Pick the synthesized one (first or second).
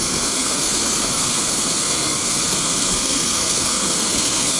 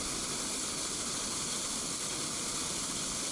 first